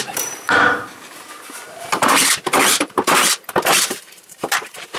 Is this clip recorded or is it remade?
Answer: remade